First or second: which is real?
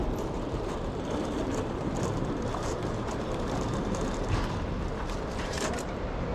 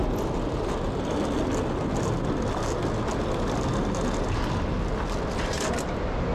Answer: second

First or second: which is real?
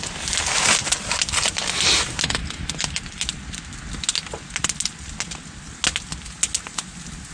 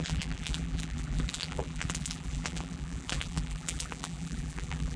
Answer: first